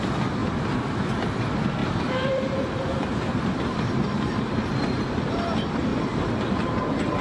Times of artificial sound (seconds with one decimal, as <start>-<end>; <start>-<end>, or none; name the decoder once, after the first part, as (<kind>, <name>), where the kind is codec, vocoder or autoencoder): 1.8-5.0 (vocoder, BigVGAN v2)